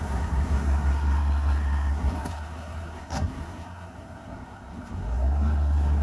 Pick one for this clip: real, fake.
fake